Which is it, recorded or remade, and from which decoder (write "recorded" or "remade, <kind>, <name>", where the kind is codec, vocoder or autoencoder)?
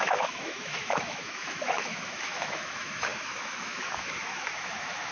remade, autoencoder, DAC-VAE